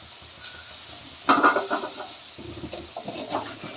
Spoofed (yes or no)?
no